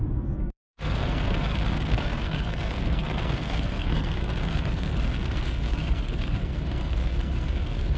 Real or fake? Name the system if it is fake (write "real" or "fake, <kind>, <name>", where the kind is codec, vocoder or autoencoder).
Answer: fake, codec, SNAC